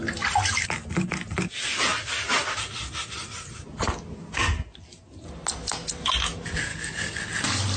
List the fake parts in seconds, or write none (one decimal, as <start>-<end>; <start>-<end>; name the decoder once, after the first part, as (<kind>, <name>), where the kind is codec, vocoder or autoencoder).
6.7-7.2 (codec, DAC)